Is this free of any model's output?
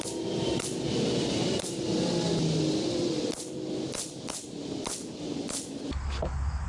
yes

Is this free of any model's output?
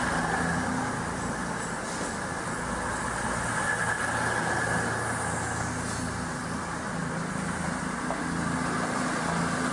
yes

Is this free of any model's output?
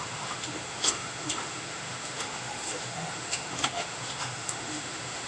no